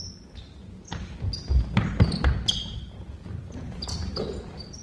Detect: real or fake real